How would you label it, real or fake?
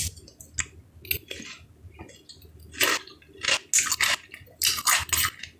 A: real